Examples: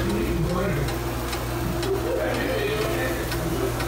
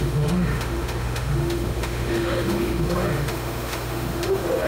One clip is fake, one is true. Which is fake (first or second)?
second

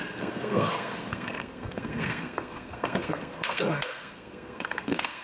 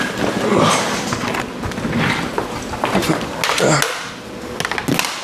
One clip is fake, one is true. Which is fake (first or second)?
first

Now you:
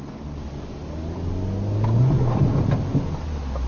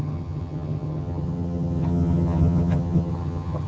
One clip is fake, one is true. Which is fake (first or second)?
second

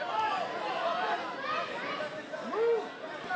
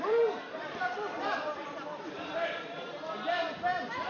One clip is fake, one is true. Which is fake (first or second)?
second